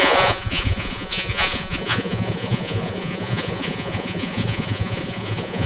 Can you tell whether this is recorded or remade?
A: remade